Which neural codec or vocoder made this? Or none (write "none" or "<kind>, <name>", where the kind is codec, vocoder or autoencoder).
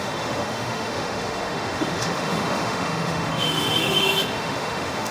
autoencoder, DAC-VAE